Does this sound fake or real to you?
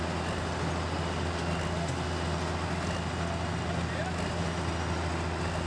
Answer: real